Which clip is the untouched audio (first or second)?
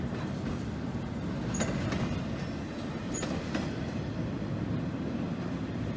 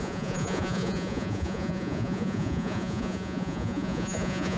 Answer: first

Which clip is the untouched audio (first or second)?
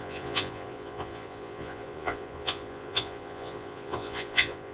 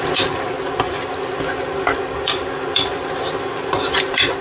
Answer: second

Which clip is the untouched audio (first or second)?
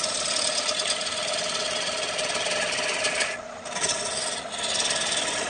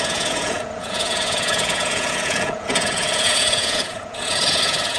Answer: first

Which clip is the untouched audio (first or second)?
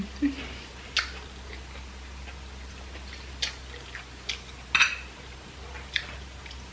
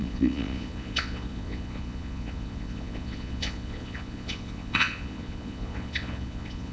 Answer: first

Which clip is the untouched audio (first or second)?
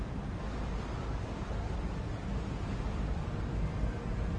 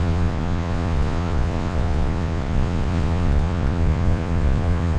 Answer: first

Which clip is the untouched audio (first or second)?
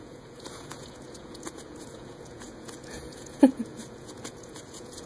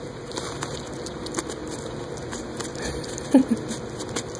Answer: second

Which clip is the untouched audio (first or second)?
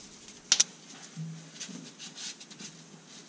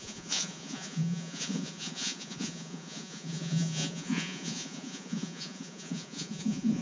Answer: first